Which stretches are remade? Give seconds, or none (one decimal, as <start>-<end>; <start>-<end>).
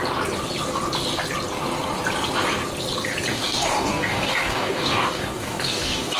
3.3-6.2